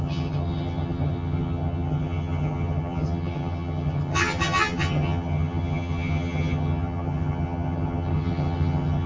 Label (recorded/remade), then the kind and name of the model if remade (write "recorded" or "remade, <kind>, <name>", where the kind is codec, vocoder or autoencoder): remade, vocoder, HiFi-GAN